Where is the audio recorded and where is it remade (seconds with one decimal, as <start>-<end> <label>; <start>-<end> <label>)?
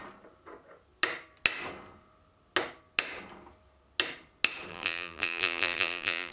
0.0-4.7 recorded; 4.7-6.3 remade